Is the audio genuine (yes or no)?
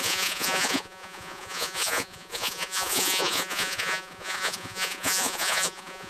no